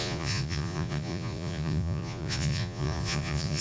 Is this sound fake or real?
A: fake